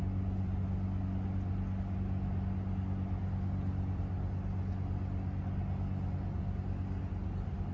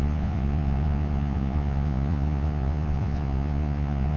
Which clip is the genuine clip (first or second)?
first